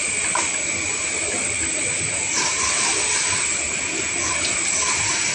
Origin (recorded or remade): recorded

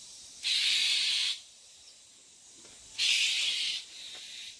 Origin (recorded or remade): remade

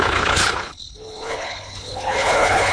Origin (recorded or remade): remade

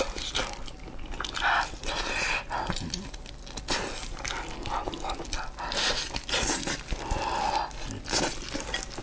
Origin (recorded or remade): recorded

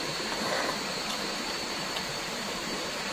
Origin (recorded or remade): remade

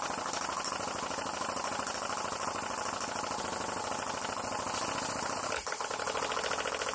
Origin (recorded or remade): recorded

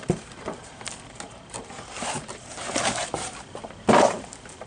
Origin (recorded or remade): recorded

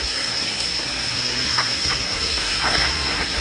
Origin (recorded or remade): remade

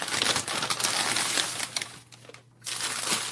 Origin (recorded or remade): recorded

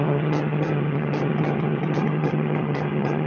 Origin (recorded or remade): remade